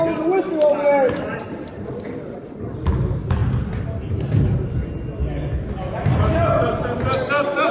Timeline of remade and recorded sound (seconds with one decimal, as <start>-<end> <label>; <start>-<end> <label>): 0.0-7.7 recorded